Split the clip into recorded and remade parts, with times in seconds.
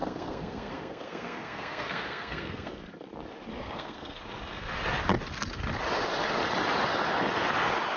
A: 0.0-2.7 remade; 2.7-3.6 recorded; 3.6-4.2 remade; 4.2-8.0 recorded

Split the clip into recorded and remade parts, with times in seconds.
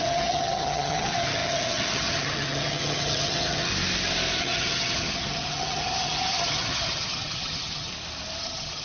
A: 0.0-3.7 remade; 3.7-4.4 recorded; 4.4-7.9 remade; 7.9-8.4 recorded; 8.4-8.8 remade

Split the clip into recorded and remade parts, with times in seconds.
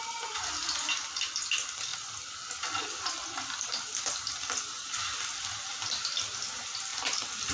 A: 0.0-7.5 recorded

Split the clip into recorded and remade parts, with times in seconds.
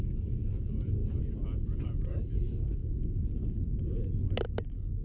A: 0.0-5.0 recorded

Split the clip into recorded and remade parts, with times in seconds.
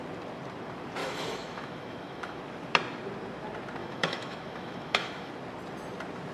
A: 0.0-1.0 recorded; 1.0-2.4 remade; 2.4-3.8 recorded; 3.8-5.3 remade; 5.3-6.3 recorded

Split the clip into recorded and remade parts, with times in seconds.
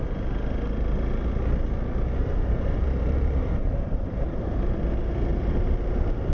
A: 0.0-2.2 recorded; 2.2-4.8 remade; 4.8-5.3 recorded; 5.3-6.3 remade